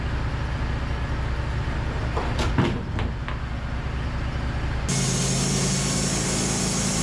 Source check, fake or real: real